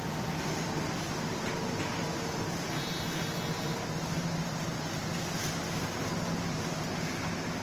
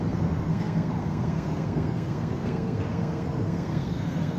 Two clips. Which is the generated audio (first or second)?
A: second